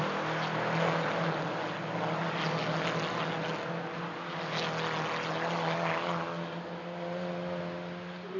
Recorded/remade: recorded